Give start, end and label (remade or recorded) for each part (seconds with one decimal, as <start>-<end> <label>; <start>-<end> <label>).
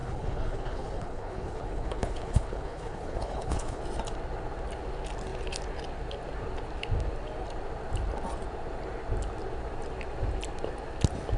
0.0-3.8 remade; 3.8-11.4 recorded